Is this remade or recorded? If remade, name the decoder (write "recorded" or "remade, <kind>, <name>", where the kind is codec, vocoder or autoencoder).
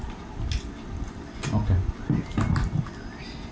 recorded